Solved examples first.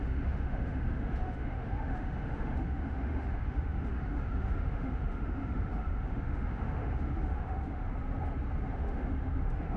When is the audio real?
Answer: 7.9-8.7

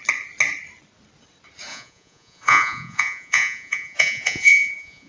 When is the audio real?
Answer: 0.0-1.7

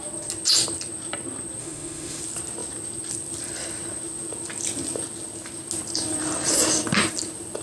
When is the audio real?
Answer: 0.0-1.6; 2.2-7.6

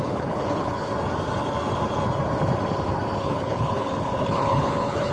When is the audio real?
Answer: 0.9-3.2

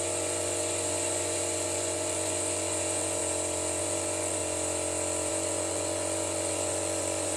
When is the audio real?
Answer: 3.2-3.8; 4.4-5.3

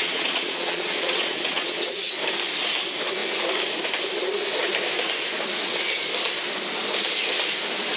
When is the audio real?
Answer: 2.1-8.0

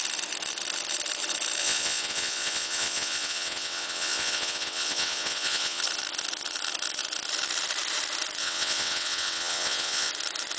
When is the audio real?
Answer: 0.0-1.6; 5.8-8.4; 10.1-10.6